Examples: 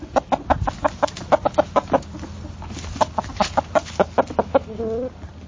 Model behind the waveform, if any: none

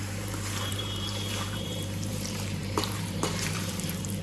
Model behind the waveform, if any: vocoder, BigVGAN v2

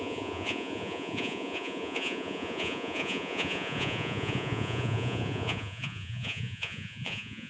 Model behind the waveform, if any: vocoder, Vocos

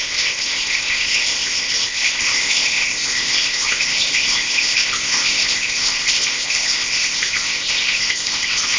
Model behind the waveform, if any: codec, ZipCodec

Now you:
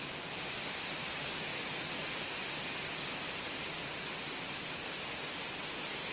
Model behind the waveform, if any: none